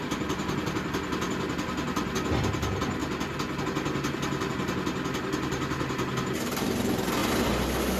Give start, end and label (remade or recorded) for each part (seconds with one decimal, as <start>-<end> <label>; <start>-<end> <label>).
0.0-8.0 recorded